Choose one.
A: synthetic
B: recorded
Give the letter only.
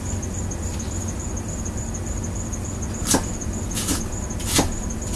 B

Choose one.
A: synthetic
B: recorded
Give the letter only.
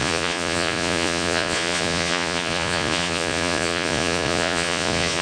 A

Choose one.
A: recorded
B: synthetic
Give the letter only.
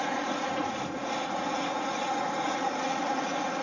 B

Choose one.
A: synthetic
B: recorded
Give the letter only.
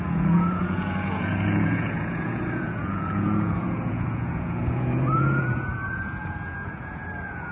A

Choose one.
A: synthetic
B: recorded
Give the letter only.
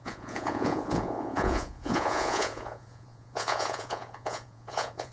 A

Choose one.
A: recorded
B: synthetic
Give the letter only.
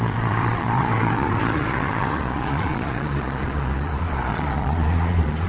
B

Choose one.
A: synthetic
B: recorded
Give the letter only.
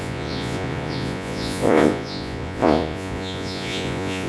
A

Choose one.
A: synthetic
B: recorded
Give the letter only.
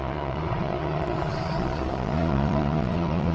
A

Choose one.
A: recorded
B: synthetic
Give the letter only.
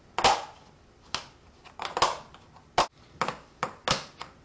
A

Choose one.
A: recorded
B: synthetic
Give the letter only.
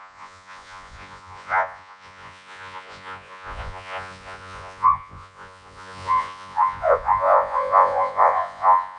B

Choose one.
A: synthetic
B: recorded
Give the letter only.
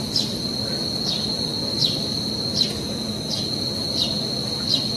B